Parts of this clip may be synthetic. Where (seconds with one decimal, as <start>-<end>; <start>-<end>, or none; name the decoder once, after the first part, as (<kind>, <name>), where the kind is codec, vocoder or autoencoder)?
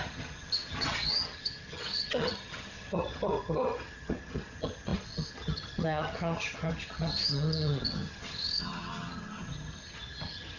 0.0-10.6 (vocoder, HiFi-GAN)